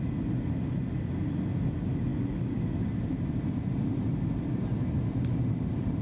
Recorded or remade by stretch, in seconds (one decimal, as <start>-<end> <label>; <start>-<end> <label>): 0.0-2.1 recorded; 2.1-6.0 remade